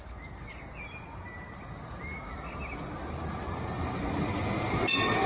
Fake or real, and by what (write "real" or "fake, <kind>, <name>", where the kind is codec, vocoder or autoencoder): real